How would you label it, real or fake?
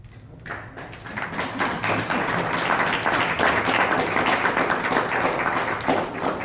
real